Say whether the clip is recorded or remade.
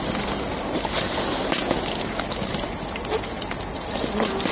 recorded